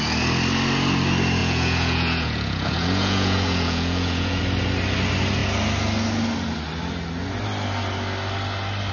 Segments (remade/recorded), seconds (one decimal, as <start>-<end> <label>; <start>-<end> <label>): 0.0-1.4 recorded; 1.4-4.4 remade; 4.4-8.9 recorded